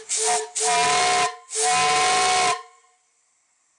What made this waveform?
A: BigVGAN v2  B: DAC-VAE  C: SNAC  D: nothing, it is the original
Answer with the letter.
D